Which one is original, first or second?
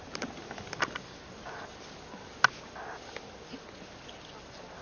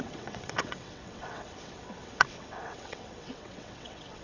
first